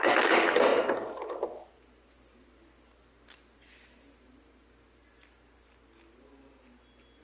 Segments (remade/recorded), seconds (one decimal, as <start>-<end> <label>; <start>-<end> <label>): 0.0-7.2 recorded